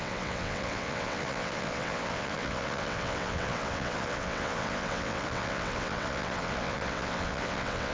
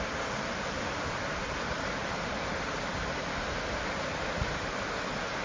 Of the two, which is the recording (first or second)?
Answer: second